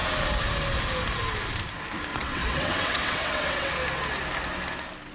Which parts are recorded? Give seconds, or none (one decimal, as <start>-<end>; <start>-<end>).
0.0-2.1; 3.7-5.1